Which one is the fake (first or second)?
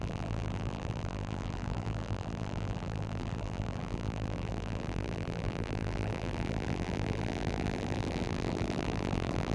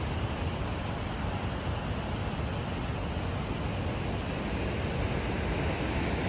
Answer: first